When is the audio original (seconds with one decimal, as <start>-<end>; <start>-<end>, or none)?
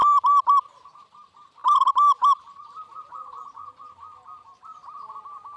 0.5-1.6; 5.0-5.6